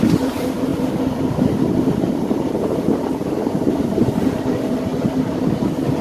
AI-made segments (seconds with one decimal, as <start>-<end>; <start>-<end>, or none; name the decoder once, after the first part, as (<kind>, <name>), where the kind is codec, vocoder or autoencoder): 0.0-4.9 (vocoder, BigVGAN v2)